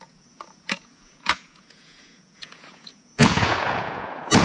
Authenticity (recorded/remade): remade